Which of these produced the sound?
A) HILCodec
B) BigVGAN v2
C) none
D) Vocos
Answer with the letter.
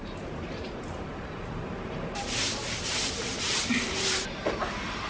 B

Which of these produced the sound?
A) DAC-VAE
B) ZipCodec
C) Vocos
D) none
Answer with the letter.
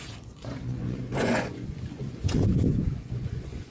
C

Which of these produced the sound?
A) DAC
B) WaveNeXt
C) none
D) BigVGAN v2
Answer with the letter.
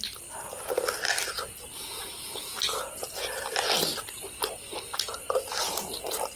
C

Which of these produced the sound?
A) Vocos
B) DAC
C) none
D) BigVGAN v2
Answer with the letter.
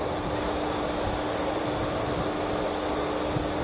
C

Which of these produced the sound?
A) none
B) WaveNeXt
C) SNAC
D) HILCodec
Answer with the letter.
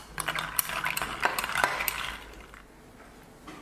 A